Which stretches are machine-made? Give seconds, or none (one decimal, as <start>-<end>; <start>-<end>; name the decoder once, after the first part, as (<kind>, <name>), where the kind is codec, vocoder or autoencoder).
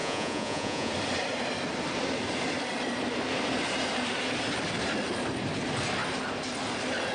0.0-0.9 (vocoder, Vocos)